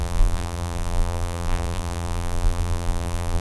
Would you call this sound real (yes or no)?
no